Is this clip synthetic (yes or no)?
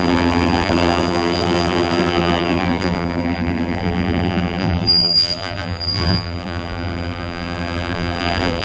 yes